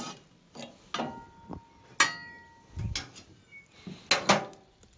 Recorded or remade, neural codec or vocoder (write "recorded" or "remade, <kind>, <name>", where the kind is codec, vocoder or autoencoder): recorded